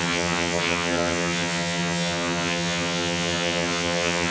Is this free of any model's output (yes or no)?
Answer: no